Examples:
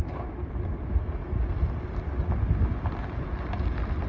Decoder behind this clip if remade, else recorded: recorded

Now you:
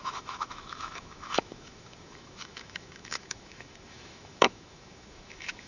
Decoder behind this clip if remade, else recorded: remade, autoencoder, DAC-VAE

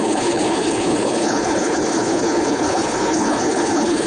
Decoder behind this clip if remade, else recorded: remade, codec, HILCodec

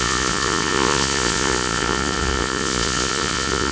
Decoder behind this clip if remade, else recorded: remade, vocoder, Vocos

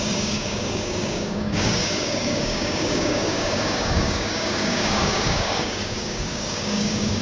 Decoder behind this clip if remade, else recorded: remade, codec, DAC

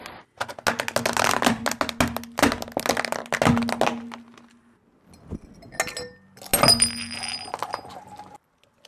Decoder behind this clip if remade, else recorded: recorded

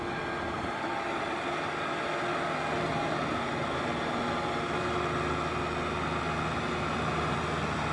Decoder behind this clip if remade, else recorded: recorded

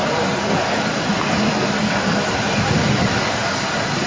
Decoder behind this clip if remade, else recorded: recorded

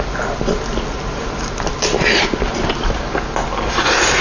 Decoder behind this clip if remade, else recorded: recorded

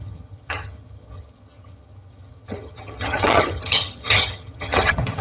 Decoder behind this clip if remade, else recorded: remade, vocoder, HiFi-GAN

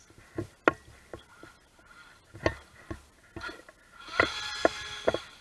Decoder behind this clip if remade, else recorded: recorded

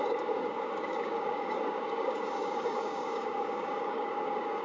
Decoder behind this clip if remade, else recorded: remade, codec, DAC